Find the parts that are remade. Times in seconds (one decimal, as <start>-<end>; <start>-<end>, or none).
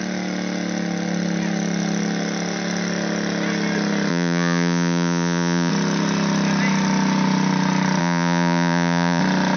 4.1-5.7; 8.0-9.2